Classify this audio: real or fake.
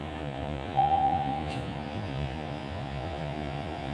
fake